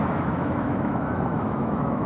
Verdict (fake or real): fake